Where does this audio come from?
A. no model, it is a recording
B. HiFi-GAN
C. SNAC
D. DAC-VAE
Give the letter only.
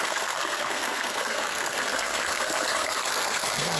C